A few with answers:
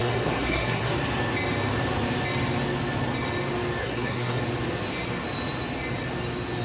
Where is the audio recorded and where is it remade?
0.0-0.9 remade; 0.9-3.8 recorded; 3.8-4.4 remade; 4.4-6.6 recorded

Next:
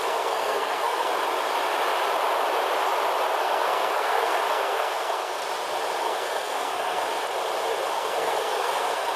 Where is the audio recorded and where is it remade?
0.0-1.1 remade; 1.1-3.4 recorded; 3.4-5.4 remade; 5.4-6.0 recorded; 6.0-7.0 remade; 7.0-7.9 recorded; 7.9-9.2 remade

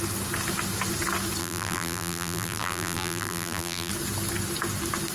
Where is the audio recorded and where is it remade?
0.0-1.4 recorded; 1.4-3.9 remade; 3.9-5.1 recorded

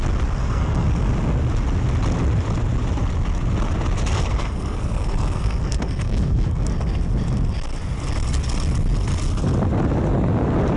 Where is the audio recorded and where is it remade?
0.0-0.4 recorded; 0.4-1.1 remade; 1.1-4.1 recorded; 4.1-6.7 remade; 6.7-10.8 recorded

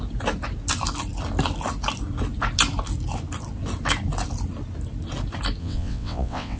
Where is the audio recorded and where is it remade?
0.0-5.6 recorded; 5.6-6.6 remade

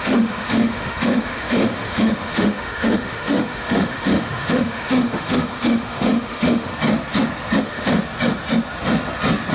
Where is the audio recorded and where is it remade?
0.0-6.7 remade; 6.7-7.6 recorded; 7.6-8.0 remade; 8.0-9.5 recorded

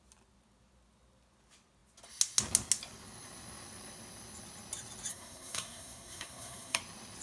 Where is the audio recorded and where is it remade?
0.0-5.1 recorded; 5.1-6.8 remade; 6.8-7.2 recorded

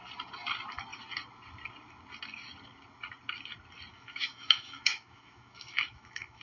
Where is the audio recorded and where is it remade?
0.0-3.9 recorded; 3.9-6.4 remade